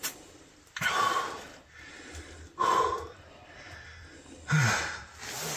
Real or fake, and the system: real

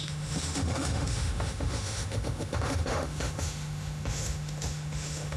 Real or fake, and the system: fake, autoencoder, DAC-VAE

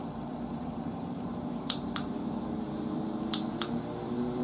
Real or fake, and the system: fake, vocoder, BigVGAN v2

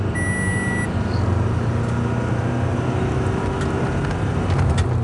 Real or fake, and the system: real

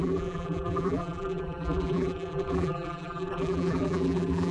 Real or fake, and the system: fake, vocoder, BigVGAN v2